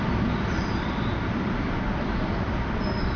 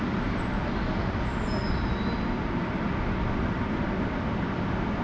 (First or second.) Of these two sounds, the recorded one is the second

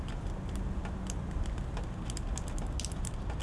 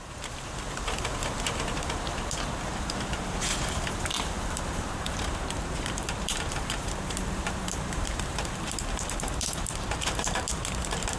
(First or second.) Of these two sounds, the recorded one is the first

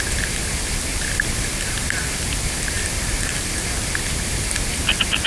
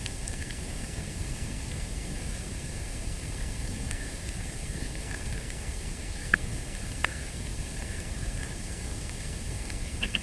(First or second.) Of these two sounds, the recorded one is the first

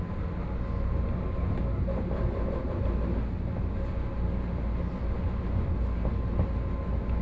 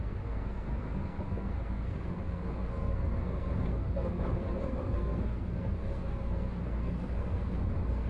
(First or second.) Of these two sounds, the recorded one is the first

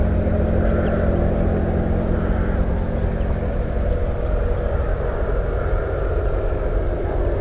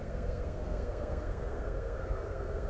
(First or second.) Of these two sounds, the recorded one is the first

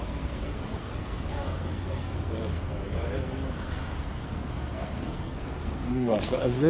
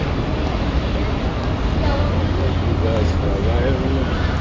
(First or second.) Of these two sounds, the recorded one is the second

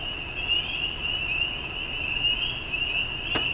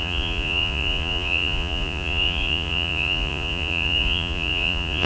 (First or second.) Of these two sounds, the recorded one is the first